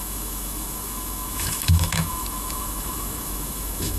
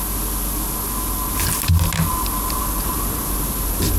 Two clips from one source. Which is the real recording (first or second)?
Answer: second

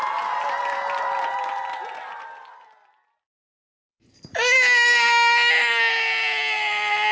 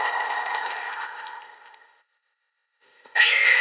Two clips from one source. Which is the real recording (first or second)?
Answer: first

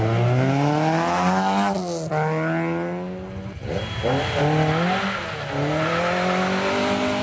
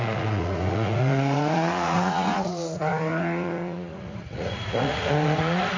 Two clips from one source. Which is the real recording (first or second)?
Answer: first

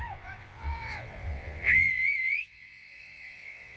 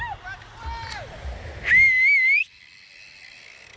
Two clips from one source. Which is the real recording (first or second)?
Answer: second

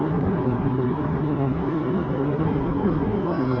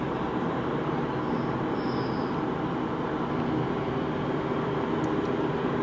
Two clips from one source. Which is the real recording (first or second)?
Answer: second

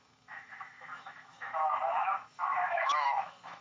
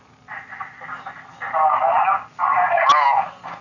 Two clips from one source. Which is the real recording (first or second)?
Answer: second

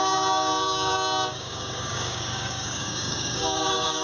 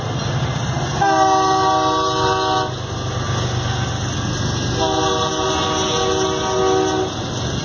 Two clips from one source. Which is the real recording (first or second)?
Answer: second